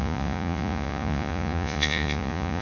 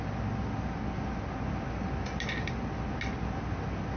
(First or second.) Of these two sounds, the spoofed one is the first